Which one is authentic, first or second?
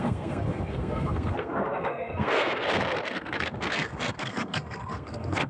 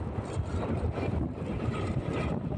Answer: second